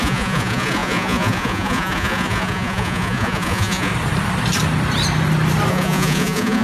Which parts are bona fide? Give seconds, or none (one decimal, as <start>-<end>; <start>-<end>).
3.9-5.7